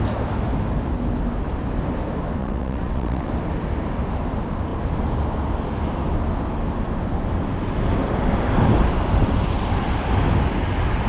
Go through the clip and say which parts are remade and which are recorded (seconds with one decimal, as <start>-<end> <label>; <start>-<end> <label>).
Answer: 0.0-2.4 recorded; 2.4-3.3 remade; 3.3-11.1 recorded